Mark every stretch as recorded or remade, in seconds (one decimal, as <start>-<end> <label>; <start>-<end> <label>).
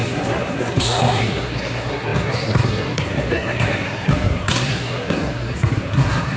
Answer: 0.0-6.4 remade